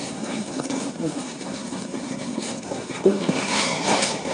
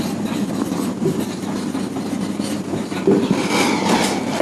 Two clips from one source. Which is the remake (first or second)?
first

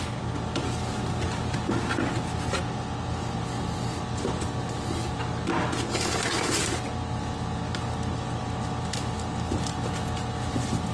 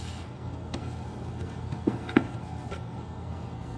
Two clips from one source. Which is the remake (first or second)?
second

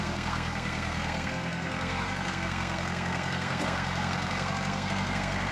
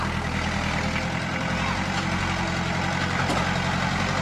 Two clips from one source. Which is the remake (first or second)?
first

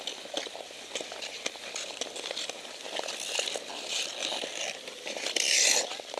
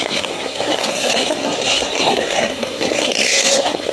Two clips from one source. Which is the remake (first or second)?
second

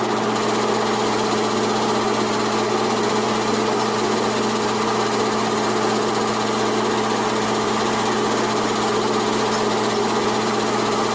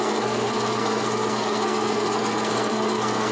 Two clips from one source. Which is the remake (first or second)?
second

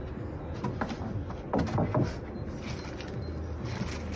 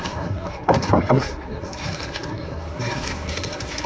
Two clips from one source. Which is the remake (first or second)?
second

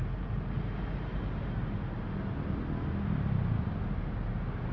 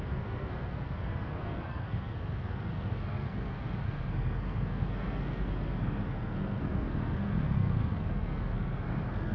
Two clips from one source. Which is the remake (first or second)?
second